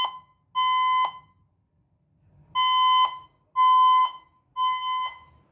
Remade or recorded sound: recorded